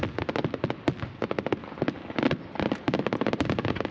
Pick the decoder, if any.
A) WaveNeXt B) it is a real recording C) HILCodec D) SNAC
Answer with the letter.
B